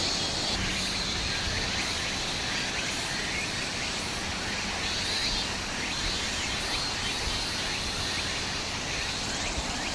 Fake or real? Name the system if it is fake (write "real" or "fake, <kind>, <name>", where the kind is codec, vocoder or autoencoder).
real